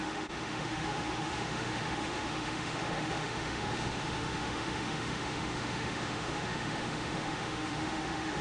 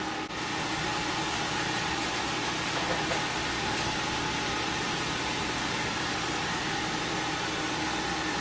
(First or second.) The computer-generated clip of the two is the first